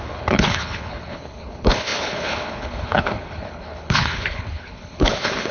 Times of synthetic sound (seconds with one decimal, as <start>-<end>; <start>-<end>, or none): 0.0-5.5